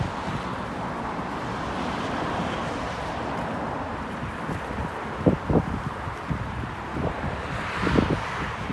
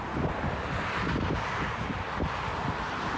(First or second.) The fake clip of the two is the first